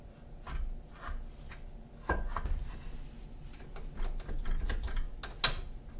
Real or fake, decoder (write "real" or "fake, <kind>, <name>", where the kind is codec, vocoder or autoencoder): real